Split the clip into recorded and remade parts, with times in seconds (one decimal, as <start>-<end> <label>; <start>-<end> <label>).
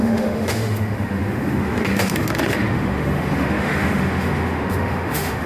0.0-5.5 remade